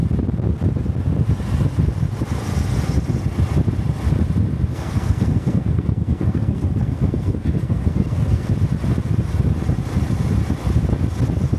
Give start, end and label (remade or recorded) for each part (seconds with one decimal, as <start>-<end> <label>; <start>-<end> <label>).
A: 0.0-4.7 recorded; 4.7-8.5 remade; 8.5-11.6 recorded